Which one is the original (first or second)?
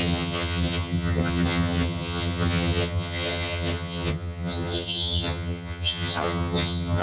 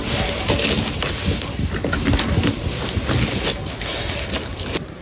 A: second